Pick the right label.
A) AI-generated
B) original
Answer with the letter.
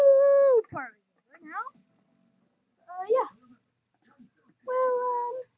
B